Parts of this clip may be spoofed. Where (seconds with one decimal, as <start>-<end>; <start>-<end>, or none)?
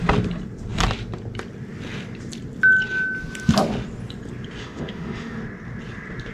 4.6-5.4